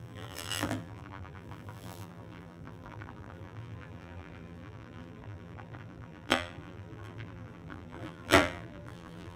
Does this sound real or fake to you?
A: fake